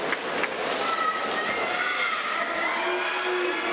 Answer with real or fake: real